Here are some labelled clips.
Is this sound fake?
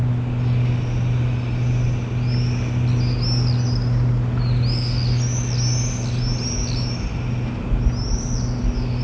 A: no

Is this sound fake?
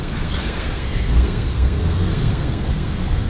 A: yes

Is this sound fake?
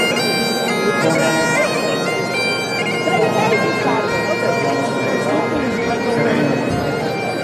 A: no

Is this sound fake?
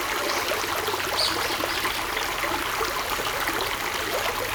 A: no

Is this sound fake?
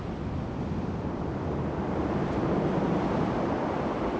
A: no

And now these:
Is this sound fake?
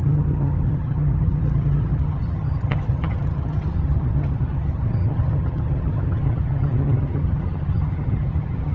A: yes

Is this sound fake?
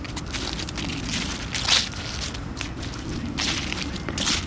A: no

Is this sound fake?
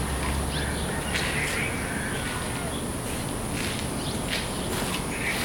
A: no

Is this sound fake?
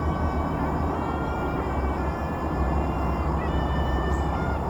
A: yes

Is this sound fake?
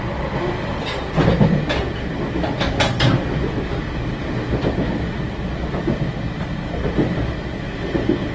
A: no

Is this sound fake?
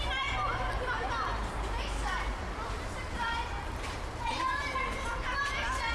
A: no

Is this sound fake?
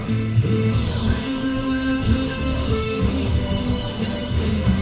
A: yes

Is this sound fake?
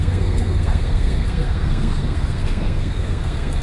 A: yes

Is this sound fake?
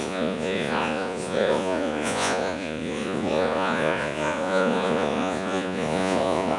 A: yes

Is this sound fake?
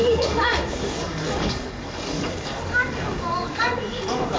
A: yes